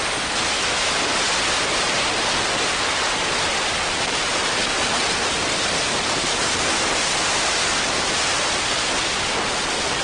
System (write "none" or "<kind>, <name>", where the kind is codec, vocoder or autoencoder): none